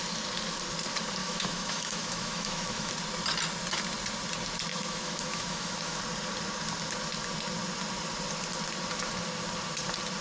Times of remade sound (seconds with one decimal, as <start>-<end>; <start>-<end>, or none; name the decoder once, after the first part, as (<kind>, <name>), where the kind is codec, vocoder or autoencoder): 1.2-2.9 (autoencoder, DAC-VAE); 4.7-6.0